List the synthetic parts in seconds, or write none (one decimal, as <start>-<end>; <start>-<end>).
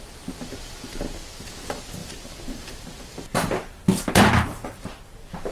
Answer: none